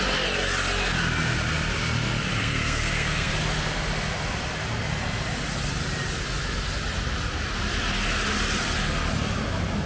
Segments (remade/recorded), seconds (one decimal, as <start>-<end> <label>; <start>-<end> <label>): 0.0-2.4 recorded; 2.4-3.3 remade; 3.3-9.9 recorded